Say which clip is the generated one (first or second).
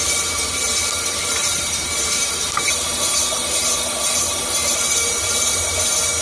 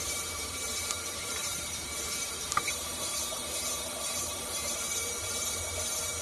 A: second